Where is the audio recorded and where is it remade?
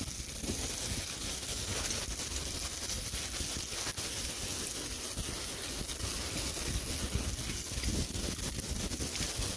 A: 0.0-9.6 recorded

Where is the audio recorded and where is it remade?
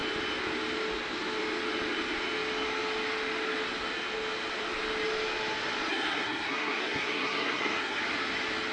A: 0.0-5.9 recorded; 5.9-8.0 remade; 8.0-8.7 recorded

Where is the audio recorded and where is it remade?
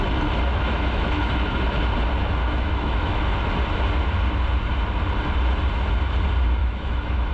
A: 0.0-0.5 recorded; 0.5-1.6 remade; 1.6-2.4 recorded; 2.4-3.2 remade; 3.2-6.6 recorded; 6.6-7.3 remade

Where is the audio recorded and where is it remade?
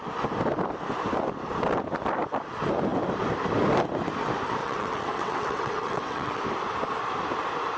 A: 0.0-4.6 recorded; 4.6-6.4 remade; 6.4-7.8 recorded